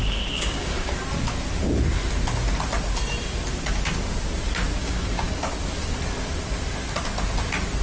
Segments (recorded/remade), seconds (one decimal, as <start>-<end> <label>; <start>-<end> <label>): 0.0-0.9 remade; 0.9-4.8 recorded; 4.8-5.4 remade; 5.4-7.8 recorded